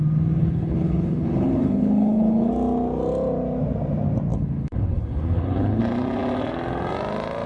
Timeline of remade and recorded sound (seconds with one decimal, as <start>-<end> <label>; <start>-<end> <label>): 0.0-0.4 recorded; 0.4-2.5 remade; 2.5-4.3 recorded; 4.3-5.8 remade; 5.8-7.5 recorded

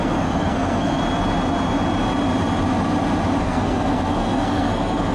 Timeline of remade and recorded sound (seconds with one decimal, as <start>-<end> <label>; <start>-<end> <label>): 0.0-1.0 remade; 1.0-3.4 recorded; 3.4-5.1 remade

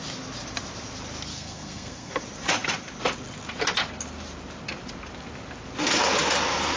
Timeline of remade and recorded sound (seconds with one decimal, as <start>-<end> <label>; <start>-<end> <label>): 0.0-1.3 recorded; 1.3-2.2 remade; 2.2-6.8 recorded

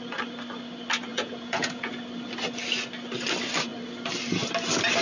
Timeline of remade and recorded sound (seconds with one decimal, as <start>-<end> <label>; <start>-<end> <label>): 0.0-1.1 recorded; 1.1-1.9 remade; 1.9-5.0 recorded

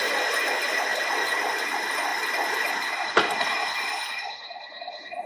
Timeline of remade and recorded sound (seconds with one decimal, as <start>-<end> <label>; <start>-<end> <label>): 0.0-0.9 recorded; 0.9-1.6 remade; 1.6-2.1 recorded; 2.1-2.7 remade; 2.7-5.3 recorded

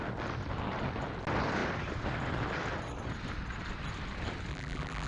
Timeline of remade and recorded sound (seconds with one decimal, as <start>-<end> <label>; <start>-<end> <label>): 0.0-4.5 recorded; 4.5-5.1 remade

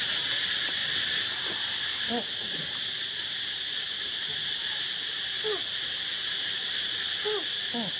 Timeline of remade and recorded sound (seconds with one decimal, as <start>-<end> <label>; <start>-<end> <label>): 0.0-8.0 recorded

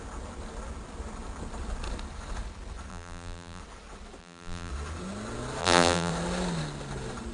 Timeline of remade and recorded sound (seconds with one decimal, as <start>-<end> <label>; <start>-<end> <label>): 0.0-2.9 recorded; 2.9-3.6 remade; 3.6-4.2 recorded; 4.2-4.7 remade; 4.7-5.6 recorded; 5.6-6.1 remade; 6.1-7.3 recorded